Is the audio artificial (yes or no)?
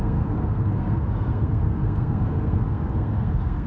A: yes